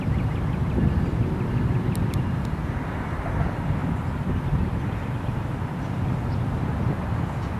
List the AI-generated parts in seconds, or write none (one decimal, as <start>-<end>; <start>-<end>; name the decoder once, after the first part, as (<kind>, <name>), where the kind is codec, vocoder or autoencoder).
3.8-6.0 (vocoder, BigVGAN v2)